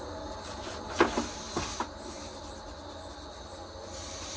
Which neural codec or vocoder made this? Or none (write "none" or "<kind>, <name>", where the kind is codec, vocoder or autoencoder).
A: none